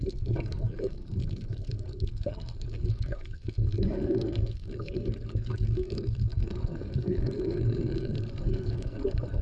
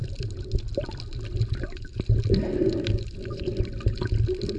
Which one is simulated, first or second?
first